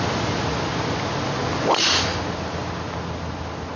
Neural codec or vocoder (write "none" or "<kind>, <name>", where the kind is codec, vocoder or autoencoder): none